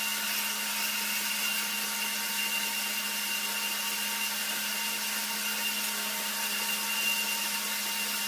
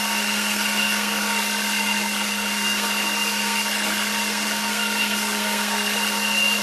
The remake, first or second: second